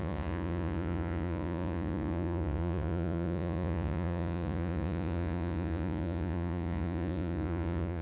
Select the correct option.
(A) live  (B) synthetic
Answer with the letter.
B